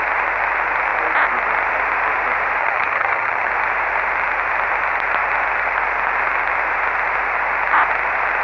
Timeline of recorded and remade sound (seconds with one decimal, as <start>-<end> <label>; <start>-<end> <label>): 0.0-2.6 recorded; 2.6-3.5 remade; 3.5-8.4 recorded